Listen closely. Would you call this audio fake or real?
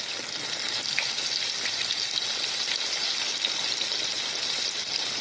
real